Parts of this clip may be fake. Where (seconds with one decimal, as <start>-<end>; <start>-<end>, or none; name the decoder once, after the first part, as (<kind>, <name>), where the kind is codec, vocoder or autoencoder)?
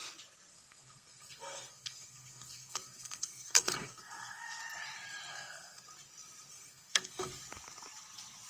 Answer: 0.5-4.6 (codec, SNAC); 5.3-5.8; 6.5-7.3